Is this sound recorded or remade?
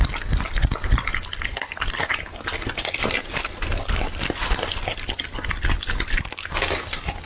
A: recorded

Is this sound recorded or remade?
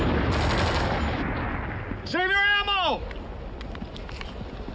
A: recorded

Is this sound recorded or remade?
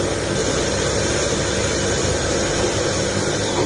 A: recorded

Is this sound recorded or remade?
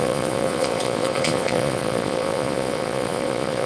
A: remade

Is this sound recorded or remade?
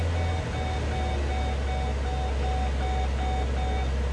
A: recorded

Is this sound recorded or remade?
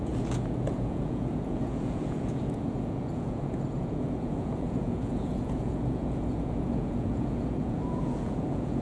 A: remade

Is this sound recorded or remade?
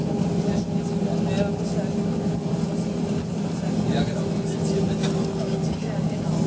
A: recorded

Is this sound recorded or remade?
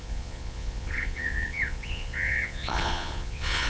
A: remade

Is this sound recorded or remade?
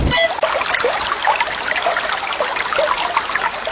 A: recorded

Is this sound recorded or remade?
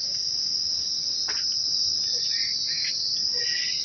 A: recorded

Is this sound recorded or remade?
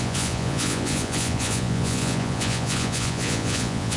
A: remade